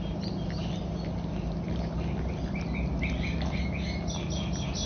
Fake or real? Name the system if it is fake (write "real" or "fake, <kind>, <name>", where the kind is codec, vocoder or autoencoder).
real